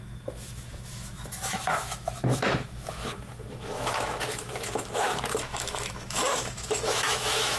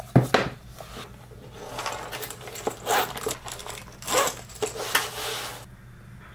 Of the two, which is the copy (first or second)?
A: first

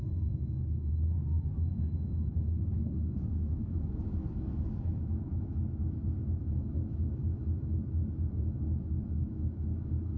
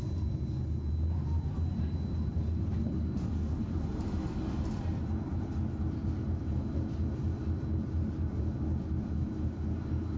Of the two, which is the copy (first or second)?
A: first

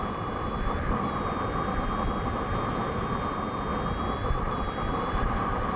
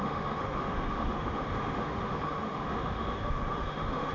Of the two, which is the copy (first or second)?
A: second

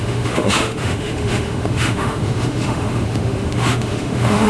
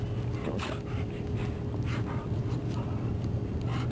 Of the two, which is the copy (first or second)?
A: first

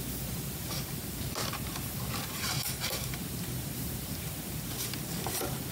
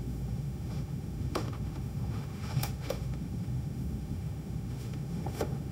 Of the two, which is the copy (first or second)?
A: second